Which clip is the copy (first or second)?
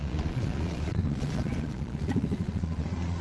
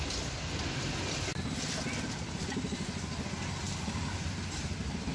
first